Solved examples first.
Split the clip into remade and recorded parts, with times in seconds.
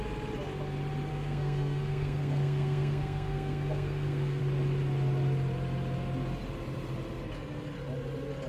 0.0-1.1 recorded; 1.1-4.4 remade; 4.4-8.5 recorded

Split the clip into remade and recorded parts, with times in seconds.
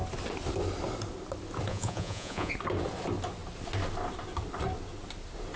0.0-1.7 recorded; 1.7-2.5 remade; 2.5-5.6 recorded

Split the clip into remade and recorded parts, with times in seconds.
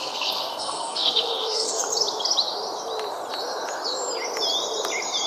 0.0-1.8 remade; 1.8-5.3 recorded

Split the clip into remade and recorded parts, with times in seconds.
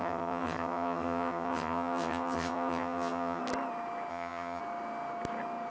0.0-3.4 remade; 3.4-4.1 recorded; 4.1-4.6 remade; 4.6-5.7 recorded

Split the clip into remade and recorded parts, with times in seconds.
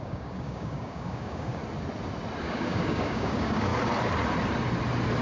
0.0-1.6 remade; 1.6-2.4 recorded; 2.4-3.7 remade; 3.7-5.2 recorded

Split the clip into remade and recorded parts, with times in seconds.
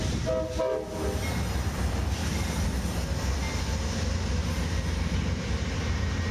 0.0-2.2 recorded; 2.2-2.8 remade; 2.8-4.4 recorded; 4.4-6.3 remade